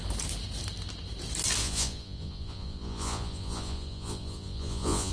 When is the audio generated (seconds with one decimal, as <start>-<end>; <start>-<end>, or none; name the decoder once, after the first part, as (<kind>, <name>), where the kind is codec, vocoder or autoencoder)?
1.6-5.1 (vocoder, Vocos)

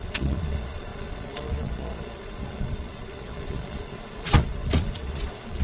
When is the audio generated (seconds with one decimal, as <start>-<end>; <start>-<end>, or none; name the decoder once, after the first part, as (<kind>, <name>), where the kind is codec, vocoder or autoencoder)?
0.0-5.6 (vocoder, Vocos)

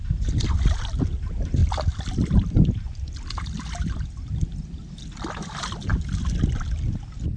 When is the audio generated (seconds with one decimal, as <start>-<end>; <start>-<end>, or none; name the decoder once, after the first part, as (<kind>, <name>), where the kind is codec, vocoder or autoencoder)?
none

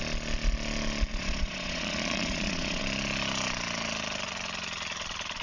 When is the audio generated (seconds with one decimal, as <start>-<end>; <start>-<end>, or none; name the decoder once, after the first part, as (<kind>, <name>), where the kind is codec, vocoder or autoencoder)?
1.1-2.8 (vocoder, Vocos)

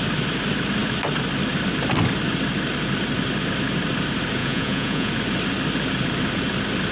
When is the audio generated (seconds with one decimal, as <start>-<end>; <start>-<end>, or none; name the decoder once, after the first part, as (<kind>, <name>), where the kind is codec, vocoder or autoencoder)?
4.4-5.1 (vocoder, Vocos)

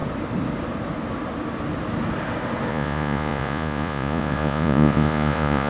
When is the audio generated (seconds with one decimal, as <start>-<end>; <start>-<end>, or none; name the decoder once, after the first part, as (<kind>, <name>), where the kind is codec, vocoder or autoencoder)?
2.7-5.7 (vocoder, Vocos)

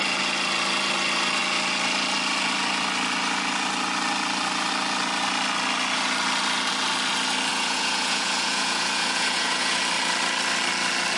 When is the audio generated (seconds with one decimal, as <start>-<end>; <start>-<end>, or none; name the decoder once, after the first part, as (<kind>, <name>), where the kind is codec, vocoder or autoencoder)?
7.5-9.8 (vocoder, Vocos)